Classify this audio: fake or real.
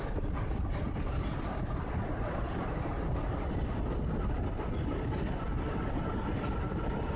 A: real